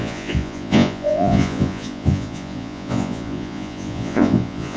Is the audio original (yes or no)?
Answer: no